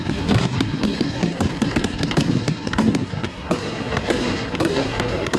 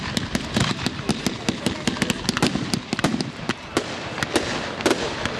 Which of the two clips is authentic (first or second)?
second